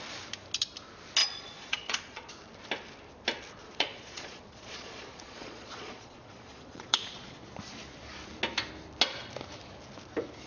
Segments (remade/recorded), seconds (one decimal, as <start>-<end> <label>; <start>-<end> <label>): 0.0-1.2 recorded; 1.2-2.3 remade; 2.3-3.6 recorded; 3.6-7.3 remade; 7.3-10.5 recorded